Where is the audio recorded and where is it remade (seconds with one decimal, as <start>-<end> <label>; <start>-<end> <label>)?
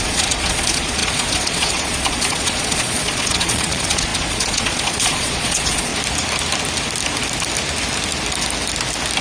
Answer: 0.0-5.9 remade; 5.9-9.2 recorded